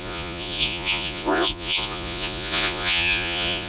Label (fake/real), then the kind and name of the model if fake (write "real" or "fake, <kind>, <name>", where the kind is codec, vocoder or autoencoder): fake, vocoder, Vocos